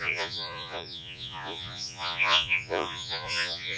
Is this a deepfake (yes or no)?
yes